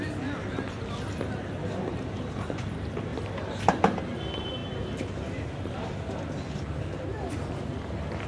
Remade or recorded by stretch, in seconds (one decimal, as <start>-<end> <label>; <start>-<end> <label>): 0.0-3.1 recorded; 3.1-4.0 remade; 4.0-8.3 recorded